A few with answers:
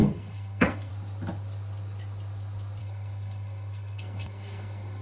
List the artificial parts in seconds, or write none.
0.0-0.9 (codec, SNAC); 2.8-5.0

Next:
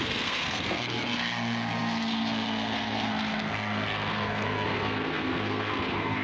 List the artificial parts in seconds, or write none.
0.0-6.2 (codec, SNAC)

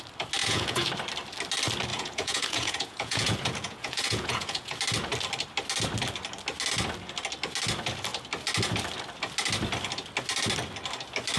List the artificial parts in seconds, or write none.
0.4-0.9 (vocoder, Vocos); 1.9-4.8

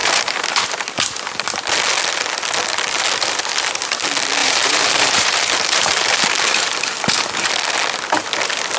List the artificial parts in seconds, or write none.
0.0-0.6 (vocoder, BigVGAN v2); 4.4-6.7

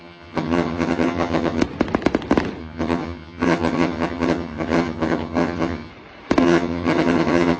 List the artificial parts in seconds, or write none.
0.0-1.6 (vocoder, HiFi-GAN); 2.6-5.9; 6.4-7.6

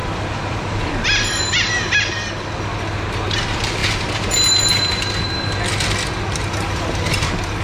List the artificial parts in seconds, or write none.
0.0-1.7 (vocoder, BigVGAN v2)

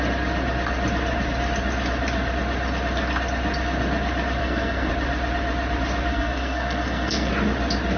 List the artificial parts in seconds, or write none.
4.4-4.9 (codec, SNAC); 6.1-7.3